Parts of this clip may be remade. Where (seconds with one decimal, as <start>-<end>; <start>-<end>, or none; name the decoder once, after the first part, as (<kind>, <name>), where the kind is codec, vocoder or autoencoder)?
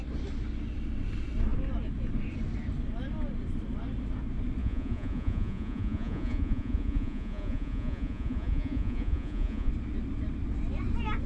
4.6-9.7 (vocoder, Vocos)